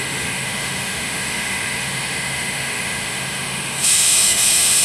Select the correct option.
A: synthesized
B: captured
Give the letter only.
A